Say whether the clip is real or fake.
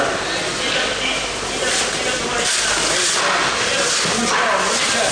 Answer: real